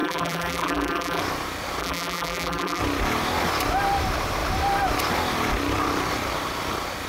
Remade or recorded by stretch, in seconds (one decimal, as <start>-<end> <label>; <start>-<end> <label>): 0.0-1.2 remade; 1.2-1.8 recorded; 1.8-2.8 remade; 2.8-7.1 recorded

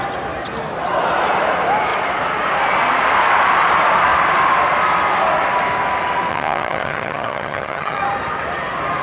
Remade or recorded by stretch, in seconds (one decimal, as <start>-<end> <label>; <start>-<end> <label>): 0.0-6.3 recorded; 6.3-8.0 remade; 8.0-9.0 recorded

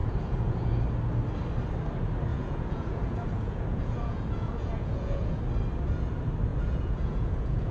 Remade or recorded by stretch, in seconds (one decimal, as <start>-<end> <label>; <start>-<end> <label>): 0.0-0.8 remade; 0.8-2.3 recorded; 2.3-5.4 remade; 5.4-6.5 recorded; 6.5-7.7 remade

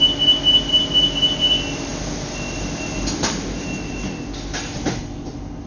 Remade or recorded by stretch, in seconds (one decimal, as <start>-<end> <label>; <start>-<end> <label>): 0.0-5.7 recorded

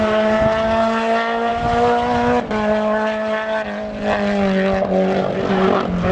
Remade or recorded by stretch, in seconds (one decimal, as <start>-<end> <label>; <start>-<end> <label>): 0.0-6.1 recorded